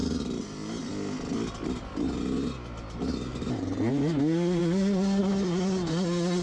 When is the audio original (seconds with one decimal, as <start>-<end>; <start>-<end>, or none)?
0.9-3.3; 3.9-6.4